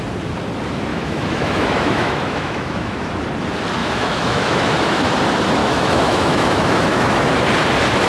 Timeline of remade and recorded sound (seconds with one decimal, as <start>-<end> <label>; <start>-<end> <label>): 0.0-0.9 recorded; 0.9-3.1 remade; 3.1-3.8 recorded; 3.8-5.1 remade; 5.1-5.6 recorded; 5.6-7.2 remade; 7.2-8.1 recorded